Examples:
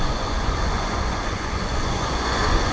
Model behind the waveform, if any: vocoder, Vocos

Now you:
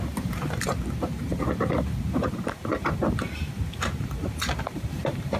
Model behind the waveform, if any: vocoder, BigVGAN v2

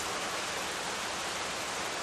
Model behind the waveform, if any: none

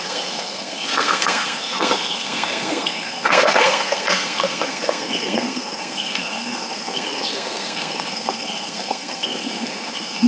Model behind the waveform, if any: codec, SNAC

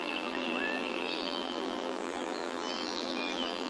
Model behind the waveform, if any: vocoder, BigVGAN v2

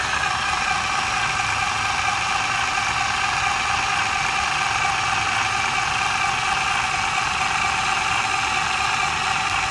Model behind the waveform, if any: none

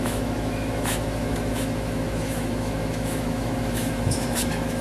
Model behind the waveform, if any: autoencoder, DAC-VAE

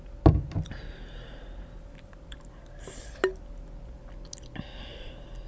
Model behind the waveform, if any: none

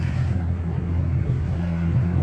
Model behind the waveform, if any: codec, SNAC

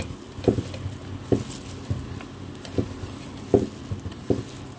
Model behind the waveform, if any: none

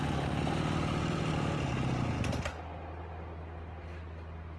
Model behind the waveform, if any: none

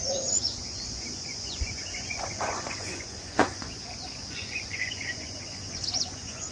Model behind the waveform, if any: vocoder, Vocos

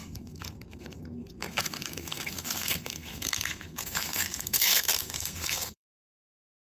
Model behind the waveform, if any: codec, SNAC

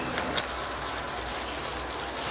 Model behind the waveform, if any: none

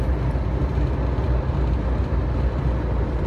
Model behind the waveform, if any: none